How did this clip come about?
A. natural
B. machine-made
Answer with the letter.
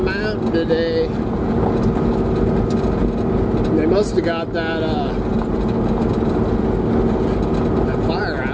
A